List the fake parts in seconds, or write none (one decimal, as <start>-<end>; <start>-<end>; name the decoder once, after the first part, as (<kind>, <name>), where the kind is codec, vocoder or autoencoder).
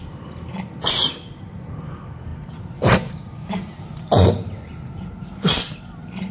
none